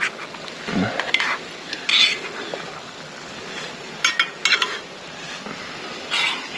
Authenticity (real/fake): real